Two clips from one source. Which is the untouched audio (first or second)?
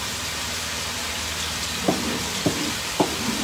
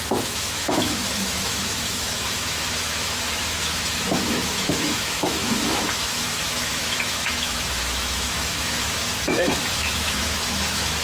first